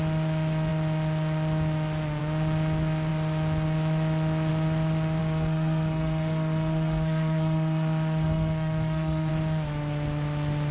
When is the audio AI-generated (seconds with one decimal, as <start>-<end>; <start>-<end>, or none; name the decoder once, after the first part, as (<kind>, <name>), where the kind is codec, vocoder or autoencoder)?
5.2-9.3 (codec, SNAC)